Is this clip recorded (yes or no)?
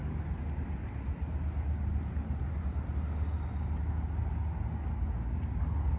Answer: yes